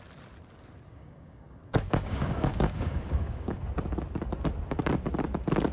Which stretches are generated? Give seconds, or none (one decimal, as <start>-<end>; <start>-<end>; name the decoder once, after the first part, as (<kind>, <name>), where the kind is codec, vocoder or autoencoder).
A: 0.9-3.6 (codec, DAC)